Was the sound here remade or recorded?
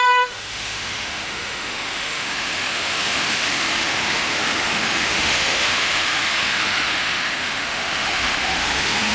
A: remade